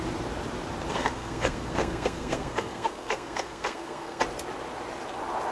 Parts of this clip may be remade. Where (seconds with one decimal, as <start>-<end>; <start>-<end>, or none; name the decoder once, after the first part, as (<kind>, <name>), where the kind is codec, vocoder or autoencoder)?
0.9-4.2 (codec, SNAC)